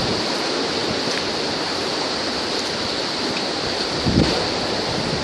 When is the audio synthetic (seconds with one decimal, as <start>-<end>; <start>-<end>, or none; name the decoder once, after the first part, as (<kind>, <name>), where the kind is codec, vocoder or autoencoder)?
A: none